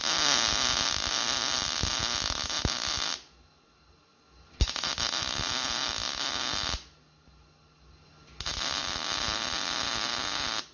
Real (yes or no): yes